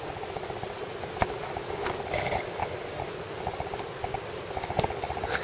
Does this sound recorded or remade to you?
recorded